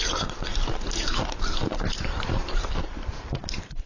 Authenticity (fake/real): fake